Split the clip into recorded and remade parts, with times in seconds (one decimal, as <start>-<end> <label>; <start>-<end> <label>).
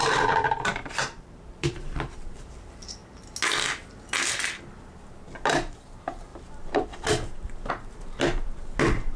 0.0-3.0 remade; 3.0-5.7 recorded; 5.7-9.2 remade